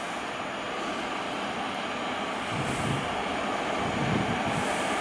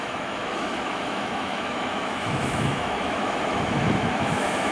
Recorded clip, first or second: first